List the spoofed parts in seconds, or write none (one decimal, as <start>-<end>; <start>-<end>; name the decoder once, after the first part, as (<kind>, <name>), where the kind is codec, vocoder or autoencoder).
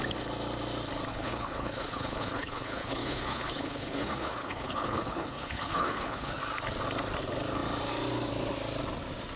1.1-6.4 (codec, HILCodec)